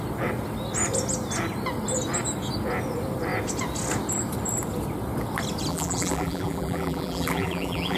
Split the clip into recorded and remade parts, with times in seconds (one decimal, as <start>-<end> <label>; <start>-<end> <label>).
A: 0.0-5.7 recorded; 5.7-8.0 remade